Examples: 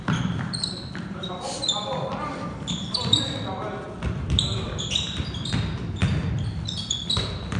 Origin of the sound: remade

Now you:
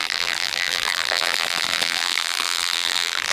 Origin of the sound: remade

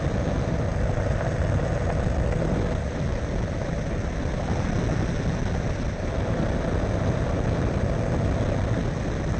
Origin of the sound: recorded